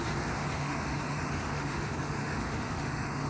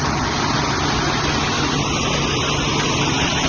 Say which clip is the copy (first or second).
first